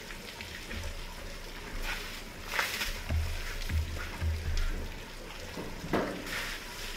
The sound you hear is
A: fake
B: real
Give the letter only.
B